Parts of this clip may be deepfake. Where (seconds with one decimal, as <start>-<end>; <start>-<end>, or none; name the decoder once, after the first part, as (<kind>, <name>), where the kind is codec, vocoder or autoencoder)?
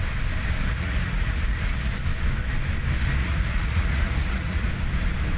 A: 0.7-2.0 (vocoder, Vocos); 3.2-4.7